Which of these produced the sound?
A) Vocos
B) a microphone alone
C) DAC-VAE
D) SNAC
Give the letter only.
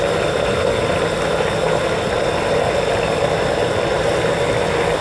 B